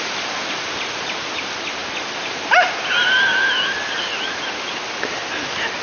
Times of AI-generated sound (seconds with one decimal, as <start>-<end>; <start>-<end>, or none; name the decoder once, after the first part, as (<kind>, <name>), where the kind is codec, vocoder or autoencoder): 1.8-4.8 (vocoder, BigVGAN v2)